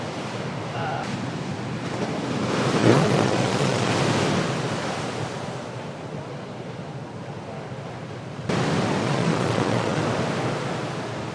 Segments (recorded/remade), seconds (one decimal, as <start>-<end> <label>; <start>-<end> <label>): 0.0-2.8 recorded; 2.8-3.9 remade; 3.9-9.0 recorded; 9.0-10.0 remade; 10.0-11.3 recorded